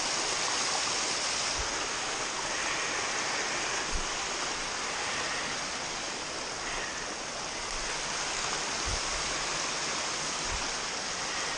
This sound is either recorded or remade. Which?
recorded